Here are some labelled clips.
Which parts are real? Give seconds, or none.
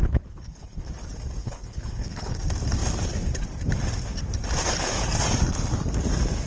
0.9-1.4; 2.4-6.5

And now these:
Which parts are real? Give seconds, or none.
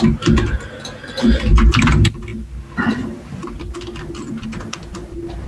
0.0-5.5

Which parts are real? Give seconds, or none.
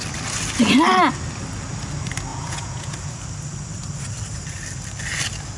0.0-2.3; 3.2-5.6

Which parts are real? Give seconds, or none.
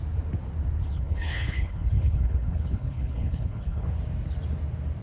0.0-0.9; 3.9-5.0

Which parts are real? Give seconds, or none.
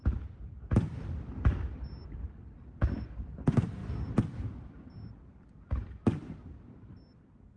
3.8-7.0